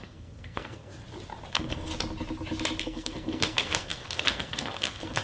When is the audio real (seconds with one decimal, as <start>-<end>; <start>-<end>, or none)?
0.9-1.5; 1.9-2.8